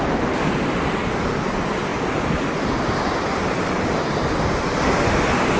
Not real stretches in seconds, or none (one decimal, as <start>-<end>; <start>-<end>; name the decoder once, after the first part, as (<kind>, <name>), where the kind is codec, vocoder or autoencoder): none